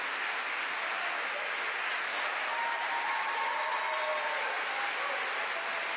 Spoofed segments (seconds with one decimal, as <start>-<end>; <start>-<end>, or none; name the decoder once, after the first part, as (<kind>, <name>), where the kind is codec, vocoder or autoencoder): none

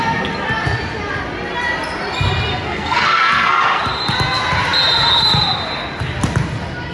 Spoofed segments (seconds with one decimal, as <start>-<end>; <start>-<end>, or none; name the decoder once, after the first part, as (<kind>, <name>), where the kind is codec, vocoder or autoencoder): 2.5-3.8 (codec, SNAC)

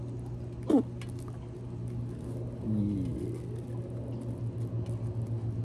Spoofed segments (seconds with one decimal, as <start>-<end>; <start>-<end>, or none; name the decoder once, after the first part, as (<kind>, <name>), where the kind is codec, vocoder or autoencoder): none

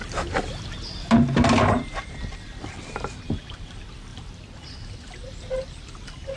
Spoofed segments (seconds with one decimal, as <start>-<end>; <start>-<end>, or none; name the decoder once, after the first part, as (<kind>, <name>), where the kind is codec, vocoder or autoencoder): 0.0-1.1 (vocoder, BigVGAN v2); 4.1-6.4

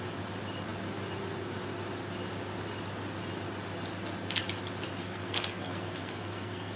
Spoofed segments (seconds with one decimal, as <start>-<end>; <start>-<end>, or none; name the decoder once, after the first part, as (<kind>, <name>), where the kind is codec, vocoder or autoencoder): 5.0-6.8 (codec, SNAC)

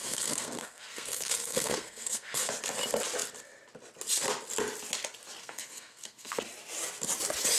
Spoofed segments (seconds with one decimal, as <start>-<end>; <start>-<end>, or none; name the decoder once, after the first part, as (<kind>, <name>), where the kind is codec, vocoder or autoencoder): 0.0-2.5 (codec, SNAC); 5.4-6.4